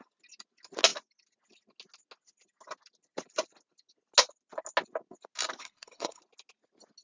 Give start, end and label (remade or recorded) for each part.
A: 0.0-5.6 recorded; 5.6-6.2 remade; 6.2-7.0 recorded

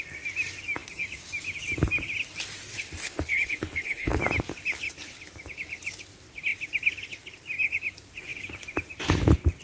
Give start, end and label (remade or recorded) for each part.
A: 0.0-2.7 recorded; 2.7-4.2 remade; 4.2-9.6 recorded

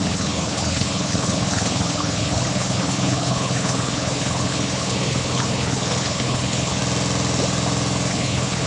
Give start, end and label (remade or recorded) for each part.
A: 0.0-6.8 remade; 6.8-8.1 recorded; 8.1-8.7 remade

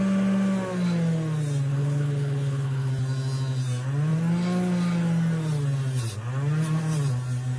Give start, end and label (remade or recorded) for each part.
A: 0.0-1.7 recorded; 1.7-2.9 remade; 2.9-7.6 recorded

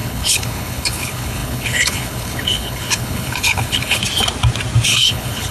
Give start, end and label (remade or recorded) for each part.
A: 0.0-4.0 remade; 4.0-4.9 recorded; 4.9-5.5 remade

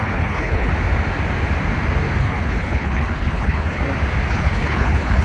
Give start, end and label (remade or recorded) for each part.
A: 0.0-0.7 remade; 0.7-2.2 recorded; 2.2-3.8 remade; 3.8-4.3 recorded; 4.3-5.2 remade

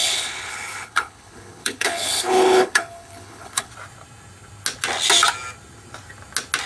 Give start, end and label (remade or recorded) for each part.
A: 0.0-3.7 remade; 3.7-6.7 recorded

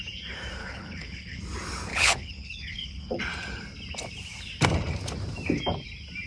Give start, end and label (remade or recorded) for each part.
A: 0.0-0.6 recorded; 0.6-1.4 remade; 1.4-1.9 recorded; 1.9-3.2 remade; 3.2-6.3 recorded